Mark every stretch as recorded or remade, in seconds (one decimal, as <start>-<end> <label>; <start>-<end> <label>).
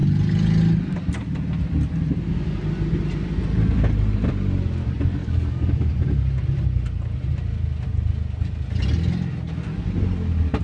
0.0-5.2 recorded; 5.2-5.9 remade; 5.9-10.6 recorded